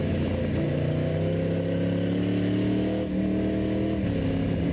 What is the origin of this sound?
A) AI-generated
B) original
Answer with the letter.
B